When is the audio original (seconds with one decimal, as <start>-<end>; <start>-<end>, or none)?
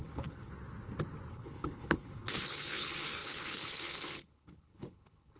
0.5-1.3